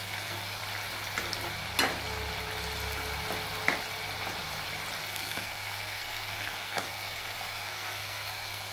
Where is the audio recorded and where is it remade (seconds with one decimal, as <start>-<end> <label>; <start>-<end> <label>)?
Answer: 0.0-0.6 remade; 0.6-5.0 recorded; 5.0-8.7 remade